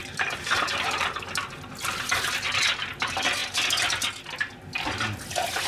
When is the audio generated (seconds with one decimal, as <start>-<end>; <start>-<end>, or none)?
0.0-1.7